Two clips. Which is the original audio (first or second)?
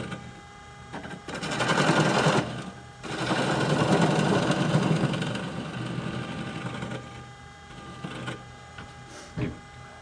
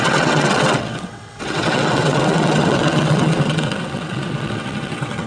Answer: first